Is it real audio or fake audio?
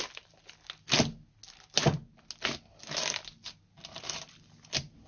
real